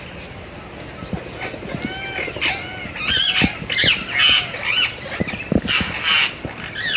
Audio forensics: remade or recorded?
recorded